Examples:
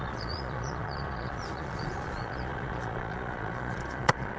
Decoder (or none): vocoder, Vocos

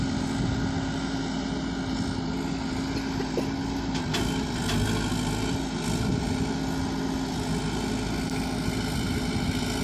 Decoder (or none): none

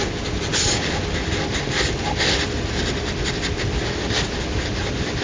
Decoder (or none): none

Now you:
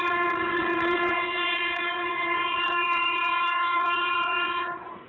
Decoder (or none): vocoder, Vocos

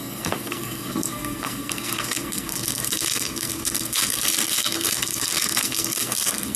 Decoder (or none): codec, SNAC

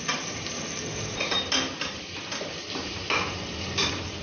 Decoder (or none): vocoder, BigVGAN v2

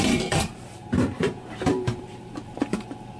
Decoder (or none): vocoder, BigVGAN v2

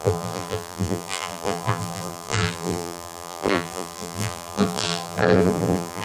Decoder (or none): vocoder, BigVGAN v2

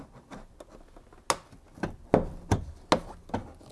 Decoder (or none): none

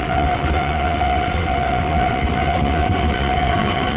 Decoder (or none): vocoder, WaveNeXt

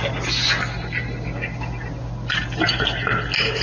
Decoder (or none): none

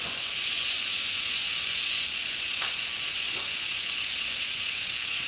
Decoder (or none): vocoder, Vocos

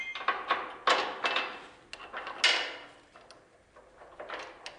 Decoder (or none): none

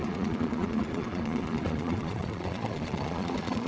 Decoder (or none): vocoder, Vocos